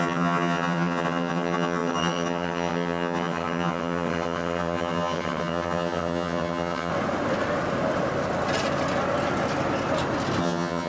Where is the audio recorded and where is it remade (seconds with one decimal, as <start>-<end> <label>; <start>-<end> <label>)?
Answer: 0.0-6.9 remade; 6.9-10.4 recorded; 10.4-10.9 remade